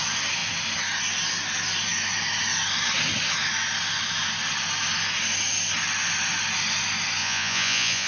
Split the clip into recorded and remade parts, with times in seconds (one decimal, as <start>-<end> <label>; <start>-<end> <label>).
0.0-7.2 recorded; 7.2-8.1 remade

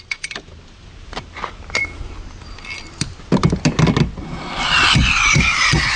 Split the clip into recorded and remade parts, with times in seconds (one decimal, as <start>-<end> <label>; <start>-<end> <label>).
0.0-6.0 recorded